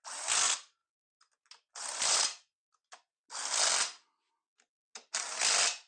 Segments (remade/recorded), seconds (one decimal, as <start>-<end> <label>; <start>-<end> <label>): 0.0-5.9 recorded